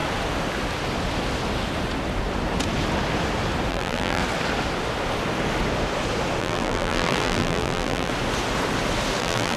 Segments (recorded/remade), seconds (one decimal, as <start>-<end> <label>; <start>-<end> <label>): 0.0-3.7 recorded; 3.7-4.2 remade; 4.2-6.4 recorded; 6.4-8.1 remade; 8.1-9.2 recorded; 9.2-9.6 remade

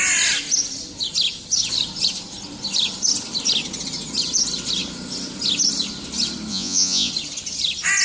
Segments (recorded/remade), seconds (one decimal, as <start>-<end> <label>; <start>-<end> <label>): 0.0-6.5 recorded; 6.5-7.1 remade; 7.1-8.0 recorded

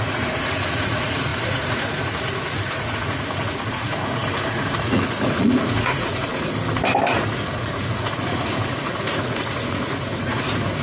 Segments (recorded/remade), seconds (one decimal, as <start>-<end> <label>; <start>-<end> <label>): 0.0-6.3 remade; 6.3-7.1 recorded; 7.1-10.8 remade